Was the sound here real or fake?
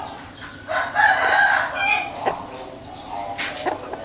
real